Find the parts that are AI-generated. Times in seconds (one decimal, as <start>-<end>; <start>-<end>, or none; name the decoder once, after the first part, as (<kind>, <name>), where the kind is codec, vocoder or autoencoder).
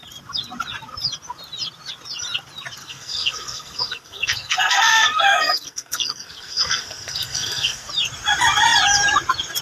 2.8-7.9 (codec, SNAC)